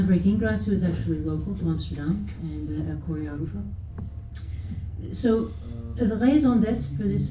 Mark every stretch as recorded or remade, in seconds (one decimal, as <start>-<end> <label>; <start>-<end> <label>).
0.0-2.1 recorded; 2.1-2.8 remade; 2.8-3.2 recorded; 3.2-3.9 remade; 3.9-4.4 recorded; 4.4-5.1 remade; 5.1-7.3 recorded